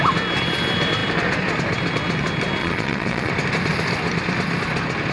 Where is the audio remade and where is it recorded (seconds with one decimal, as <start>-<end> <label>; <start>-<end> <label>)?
0.0-2.6 recorded; 2.6-3.3 remade; 3.3-5.1 recorded